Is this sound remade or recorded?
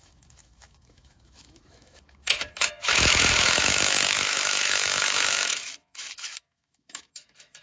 remade